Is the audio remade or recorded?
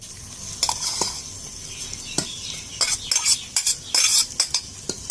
recorded